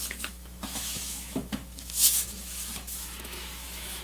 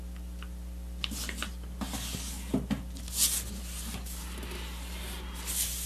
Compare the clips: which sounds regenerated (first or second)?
first